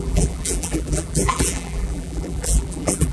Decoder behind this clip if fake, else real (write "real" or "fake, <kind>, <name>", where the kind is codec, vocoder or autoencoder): fake, vocoder, BigVGAN v2